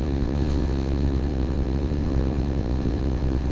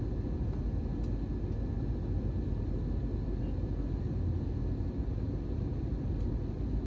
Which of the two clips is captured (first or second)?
second